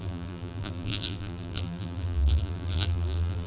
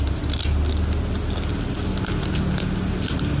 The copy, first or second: first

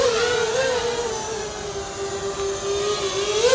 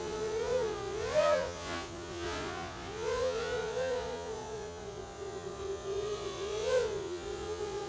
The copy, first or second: second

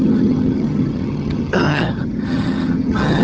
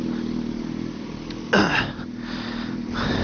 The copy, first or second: first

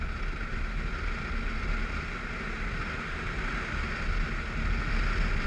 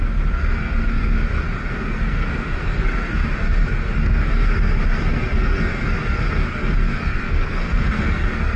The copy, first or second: second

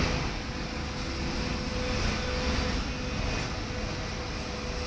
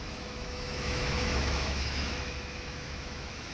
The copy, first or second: second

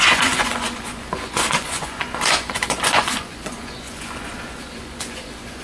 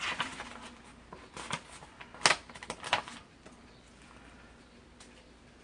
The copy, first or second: first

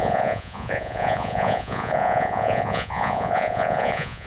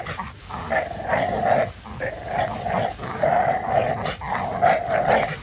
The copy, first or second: first